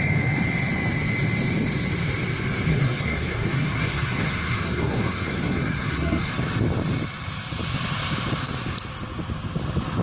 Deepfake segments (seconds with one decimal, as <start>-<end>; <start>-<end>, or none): 2.7-6.3